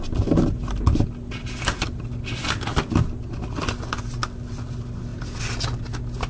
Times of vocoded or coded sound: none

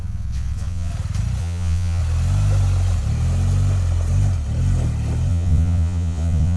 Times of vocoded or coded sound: 0.0-0.9; 1.4-2.0; 5.3-6.6

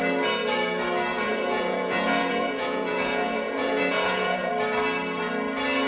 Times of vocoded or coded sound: 1.1-4.5

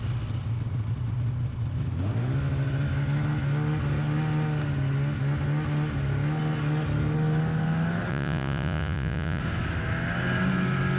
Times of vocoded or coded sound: 8.1-9.4